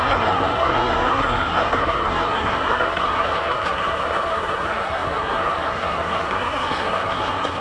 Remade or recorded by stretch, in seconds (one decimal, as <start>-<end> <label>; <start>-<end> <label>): 0.0-7.6 remade